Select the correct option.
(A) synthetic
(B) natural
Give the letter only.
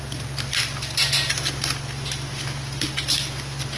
B